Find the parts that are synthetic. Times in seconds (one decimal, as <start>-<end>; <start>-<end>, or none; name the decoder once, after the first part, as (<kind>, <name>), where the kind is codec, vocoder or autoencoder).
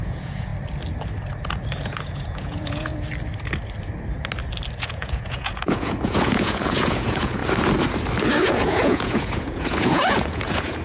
0.0-0.5 (vocoder, Vocos); 1.8-2.9; 4.8-7.4; 8.4-10.8